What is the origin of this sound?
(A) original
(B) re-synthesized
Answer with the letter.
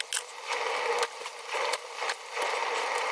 A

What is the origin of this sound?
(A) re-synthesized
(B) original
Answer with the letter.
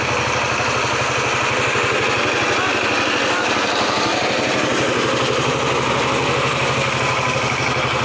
B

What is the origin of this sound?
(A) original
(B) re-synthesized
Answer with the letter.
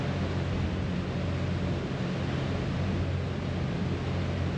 A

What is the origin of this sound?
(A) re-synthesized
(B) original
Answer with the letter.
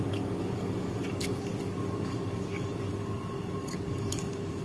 A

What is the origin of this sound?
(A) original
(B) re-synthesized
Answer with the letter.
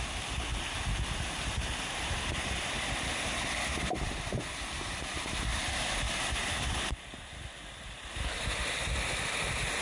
A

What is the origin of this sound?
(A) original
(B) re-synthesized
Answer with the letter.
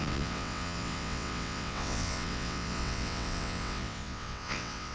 B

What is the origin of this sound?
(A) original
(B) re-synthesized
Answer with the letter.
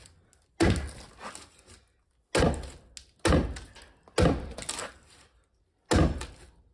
A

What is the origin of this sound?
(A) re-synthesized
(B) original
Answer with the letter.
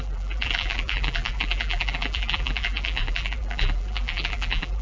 A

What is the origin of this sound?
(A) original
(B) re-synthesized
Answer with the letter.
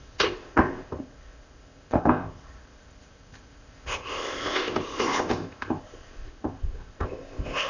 B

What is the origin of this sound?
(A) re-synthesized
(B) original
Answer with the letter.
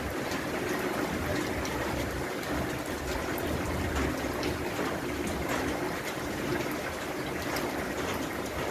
B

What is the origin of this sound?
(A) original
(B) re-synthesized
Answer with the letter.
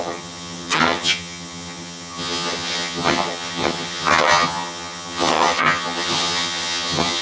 B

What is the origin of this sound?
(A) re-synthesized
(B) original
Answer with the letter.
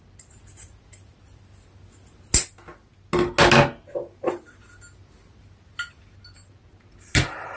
B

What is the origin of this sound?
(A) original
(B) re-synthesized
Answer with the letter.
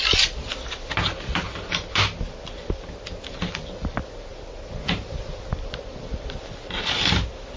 A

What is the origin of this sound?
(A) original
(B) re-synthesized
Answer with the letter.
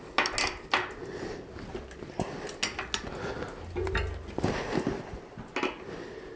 A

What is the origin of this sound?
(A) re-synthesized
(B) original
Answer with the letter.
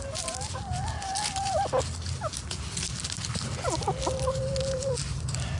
B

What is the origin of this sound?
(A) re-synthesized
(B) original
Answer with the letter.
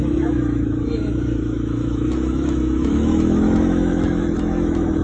A